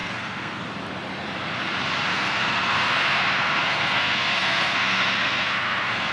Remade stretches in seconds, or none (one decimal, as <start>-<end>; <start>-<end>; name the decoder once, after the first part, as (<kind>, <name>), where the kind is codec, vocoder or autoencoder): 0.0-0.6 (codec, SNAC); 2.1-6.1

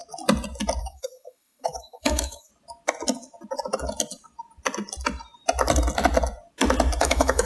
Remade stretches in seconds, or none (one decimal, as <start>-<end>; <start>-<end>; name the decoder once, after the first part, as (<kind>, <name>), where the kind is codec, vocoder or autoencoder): 0.8-2.5 (autoencoder, DAC-VAE); 7.0-7.5

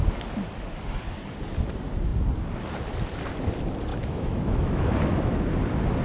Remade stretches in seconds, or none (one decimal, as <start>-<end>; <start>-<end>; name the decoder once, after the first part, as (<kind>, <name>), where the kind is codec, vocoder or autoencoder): 3.9-5.4 (autoencoder, DAC-VAE)

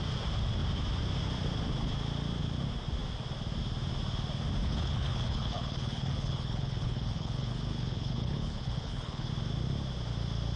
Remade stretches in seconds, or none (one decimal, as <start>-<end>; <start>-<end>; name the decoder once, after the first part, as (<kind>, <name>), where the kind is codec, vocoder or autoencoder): 4.6-9.3 (codec, HILCodec)

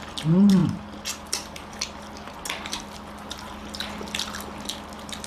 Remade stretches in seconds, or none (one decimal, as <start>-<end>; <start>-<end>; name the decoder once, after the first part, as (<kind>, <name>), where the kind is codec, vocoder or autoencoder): none

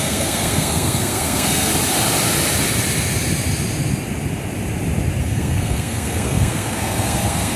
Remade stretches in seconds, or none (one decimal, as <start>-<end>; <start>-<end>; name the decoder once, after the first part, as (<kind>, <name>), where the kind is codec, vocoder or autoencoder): 0.0-1.7 (codec, SNAC); 5.2-7.6